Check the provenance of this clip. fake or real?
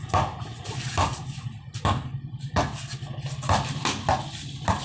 real